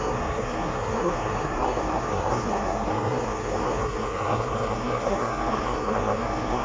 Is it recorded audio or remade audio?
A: remade